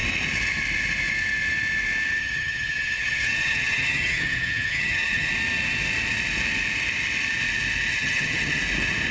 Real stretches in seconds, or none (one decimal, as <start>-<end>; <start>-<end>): 0.0-2.2; 5.3-7.9; 8.6-9.1